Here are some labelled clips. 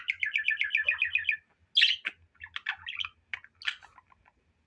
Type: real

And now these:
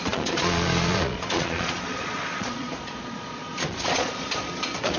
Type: fake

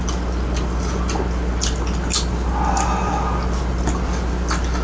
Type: real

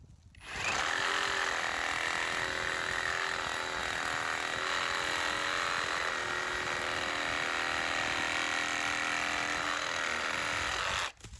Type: real